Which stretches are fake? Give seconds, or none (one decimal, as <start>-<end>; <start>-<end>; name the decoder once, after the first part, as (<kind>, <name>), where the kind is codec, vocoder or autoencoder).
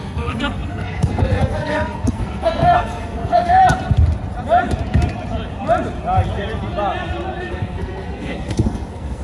0.0-3.6 (codec, SNAC); 7.4-9.2